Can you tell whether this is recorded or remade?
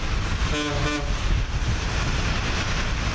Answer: recorded